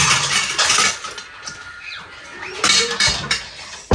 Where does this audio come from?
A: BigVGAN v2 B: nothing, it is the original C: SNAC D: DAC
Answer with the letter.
B